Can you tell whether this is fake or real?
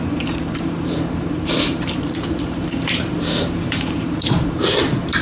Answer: fake